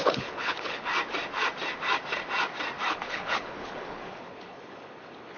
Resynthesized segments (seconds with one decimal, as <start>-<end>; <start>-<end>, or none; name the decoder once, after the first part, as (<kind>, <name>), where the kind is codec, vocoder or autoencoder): 0.0-0.9 (codec, HILCodec); 2.9-5.4